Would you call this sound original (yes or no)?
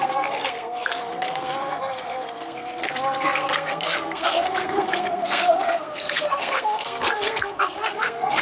no